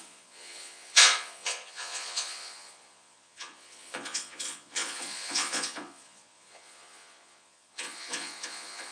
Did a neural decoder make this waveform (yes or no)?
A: yes